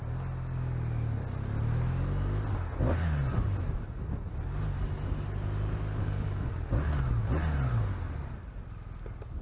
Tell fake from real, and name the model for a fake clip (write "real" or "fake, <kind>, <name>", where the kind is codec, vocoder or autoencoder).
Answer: real